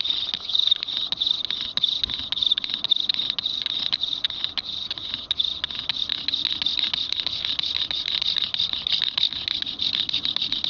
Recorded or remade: recorded